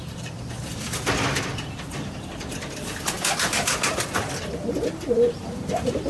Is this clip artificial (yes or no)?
yes